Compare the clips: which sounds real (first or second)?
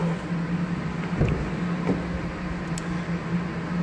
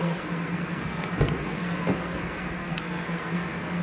first